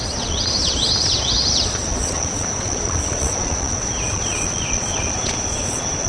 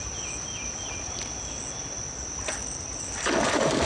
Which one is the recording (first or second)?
second